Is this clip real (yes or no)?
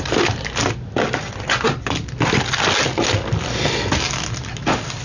yes